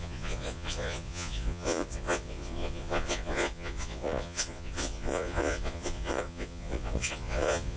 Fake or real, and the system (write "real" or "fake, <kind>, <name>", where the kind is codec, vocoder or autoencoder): fake, vocoder, Vocos